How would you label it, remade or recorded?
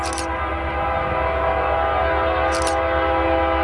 recorded